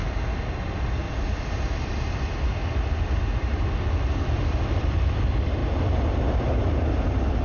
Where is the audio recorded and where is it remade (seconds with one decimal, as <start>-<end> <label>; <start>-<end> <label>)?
0.0-4.2 recorded; 4.2-5.6 remade; 5.6-7.0 recorded; 7.0-7.4 remade